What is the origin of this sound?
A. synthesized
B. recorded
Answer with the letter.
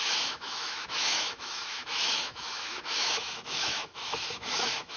A